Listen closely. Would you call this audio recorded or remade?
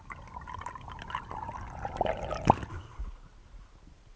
recorded